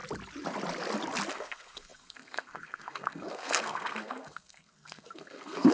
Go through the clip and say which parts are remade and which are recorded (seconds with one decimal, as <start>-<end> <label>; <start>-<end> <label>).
0.0-1.3 recorded; 1.3-5.7 remade